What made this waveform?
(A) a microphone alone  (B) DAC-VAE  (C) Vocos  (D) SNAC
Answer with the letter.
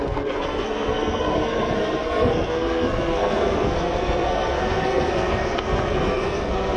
D